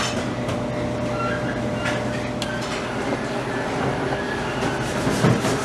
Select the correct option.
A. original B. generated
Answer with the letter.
A